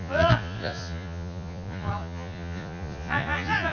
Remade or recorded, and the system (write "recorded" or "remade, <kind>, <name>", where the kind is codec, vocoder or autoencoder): remade, vocoder, Vocos